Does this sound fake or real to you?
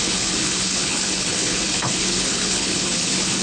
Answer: fake